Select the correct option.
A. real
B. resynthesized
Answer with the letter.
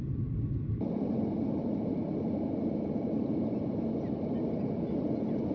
A